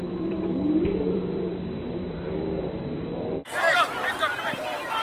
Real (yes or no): no